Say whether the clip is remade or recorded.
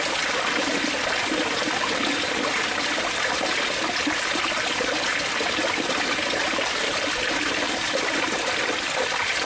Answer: recorded